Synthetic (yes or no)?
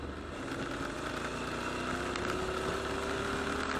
no